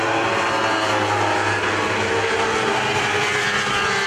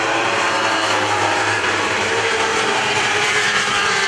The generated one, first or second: second